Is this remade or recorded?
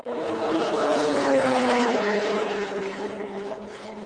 remade